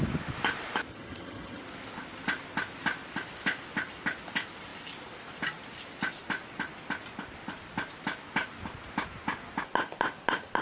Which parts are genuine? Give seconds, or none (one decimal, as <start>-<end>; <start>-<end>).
0.0-0.9; 1.6-10.6

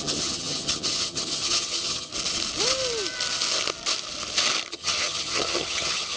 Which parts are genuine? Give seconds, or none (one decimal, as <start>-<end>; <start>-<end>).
2.1-4.7

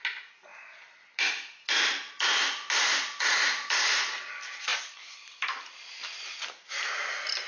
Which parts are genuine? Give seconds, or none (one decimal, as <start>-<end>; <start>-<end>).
0.0-7.5

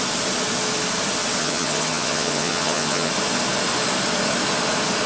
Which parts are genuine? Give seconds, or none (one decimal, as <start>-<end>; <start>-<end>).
0.0-1.4; 3.1-5.1

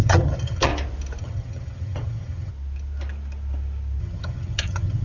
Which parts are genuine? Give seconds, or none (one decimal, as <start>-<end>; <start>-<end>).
0.7-1.2; 2.5-4.0

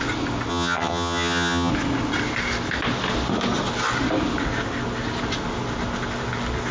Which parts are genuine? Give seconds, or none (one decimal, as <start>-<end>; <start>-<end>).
0.0-0.5; 1.7-6.7